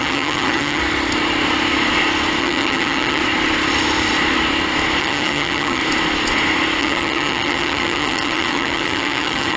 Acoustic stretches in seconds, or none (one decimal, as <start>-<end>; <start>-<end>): 0.8-2.4; 3.2-5.0; 5.8-6.8